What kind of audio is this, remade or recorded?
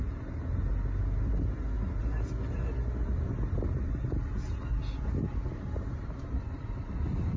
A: recorded